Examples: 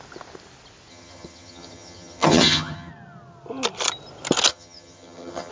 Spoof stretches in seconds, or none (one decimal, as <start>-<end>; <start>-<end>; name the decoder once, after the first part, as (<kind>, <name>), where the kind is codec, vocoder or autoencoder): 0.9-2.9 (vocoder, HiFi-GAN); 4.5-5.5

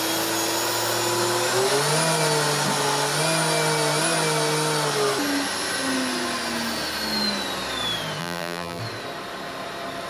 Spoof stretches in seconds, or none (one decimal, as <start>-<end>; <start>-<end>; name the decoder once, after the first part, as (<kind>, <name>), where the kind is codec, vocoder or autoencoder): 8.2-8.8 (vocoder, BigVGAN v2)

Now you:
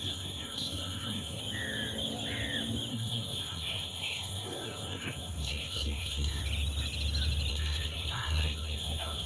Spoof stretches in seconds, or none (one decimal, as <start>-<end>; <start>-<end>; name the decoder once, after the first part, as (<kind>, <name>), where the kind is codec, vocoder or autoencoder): 0.0-1.4 (codec, SNAC); 2.9-6.4; 7.5-9.3